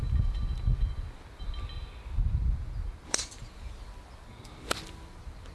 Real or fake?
real